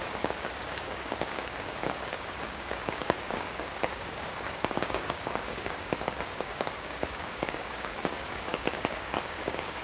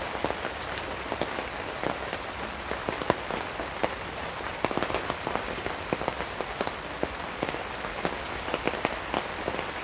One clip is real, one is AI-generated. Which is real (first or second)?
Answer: second